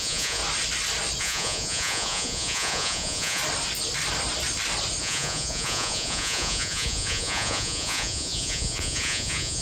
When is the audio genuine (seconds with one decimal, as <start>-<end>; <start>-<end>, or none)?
0.4-1.2; 3.4-5.0